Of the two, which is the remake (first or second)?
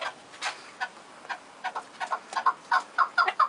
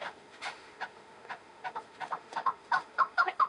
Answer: second